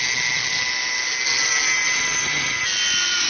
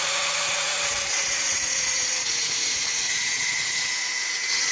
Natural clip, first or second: first